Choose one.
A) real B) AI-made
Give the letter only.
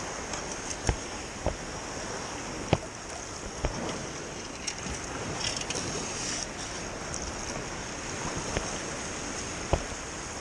A